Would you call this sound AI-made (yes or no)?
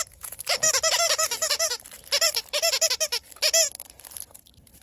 yes